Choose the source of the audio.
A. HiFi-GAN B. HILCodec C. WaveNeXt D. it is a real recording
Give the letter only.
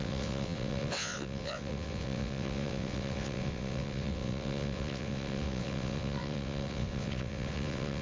C